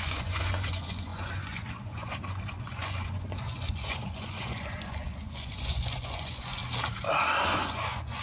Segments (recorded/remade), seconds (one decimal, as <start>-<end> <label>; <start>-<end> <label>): 0.0-6.6 remade; 6.6-7.5 recorded; 7.5-8.2 remade